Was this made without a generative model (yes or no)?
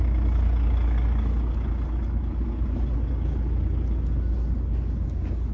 yes